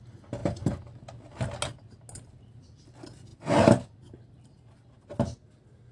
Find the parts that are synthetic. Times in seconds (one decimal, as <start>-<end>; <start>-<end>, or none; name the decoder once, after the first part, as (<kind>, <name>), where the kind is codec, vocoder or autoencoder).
none